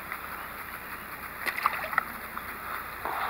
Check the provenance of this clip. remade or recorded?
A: remade